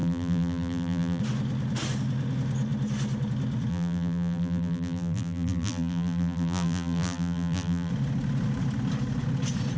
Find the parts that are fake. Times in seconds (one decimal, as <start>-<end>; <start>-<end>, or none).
0.0-1.2; 3.7-7.9